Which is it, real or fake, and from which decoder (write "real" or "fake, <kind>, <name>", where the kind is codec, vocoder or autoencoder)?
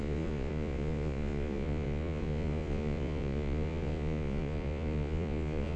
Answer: fake, vocoder, Vocos